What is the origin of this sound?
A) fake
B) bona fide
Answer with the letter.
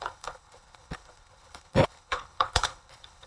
A